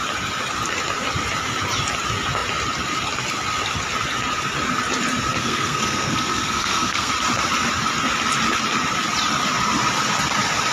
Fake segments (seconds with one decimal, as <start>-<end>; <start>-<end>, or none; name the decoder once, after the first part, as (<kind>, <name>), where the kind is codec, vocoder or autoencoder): 5.4-7.1 (codec, SNAC)